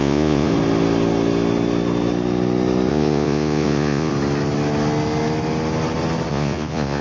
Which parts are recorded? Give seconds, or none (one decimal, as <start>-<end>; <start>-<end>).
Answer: 0.5-2.9; 4.1-6.3